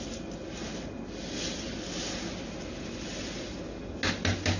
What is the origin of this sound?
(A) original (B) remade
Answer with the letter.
A